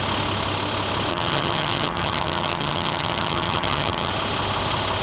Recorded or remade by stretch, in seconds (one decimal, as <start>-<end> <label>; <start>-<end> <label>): 0.0-1.1 recorded; 1.1-4.1 remade; 4.1-5.0 recorded